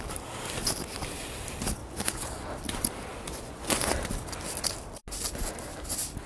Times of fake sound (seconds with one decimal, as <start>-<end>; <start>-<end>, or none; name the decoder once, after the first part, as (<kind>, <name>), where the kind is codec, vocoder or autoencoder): 1.8-2.5 (vocoder, Vocos); 3.1-3.9